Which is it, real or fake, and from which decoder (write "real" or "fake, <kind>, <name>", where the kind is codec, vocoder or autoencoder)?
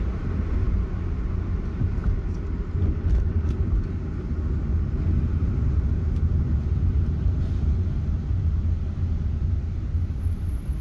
real